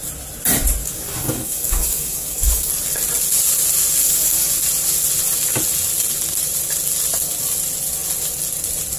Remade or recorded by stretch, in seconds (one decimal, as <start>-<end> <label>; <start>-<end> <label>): 0.0-0.8 recorded; 0.8-2.7 remade; 2.7-4.0 recorded; 4.0-4.5 remade; 4.5-9.0 recorded